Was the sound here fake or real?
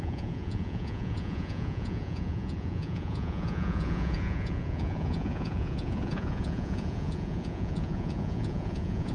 fake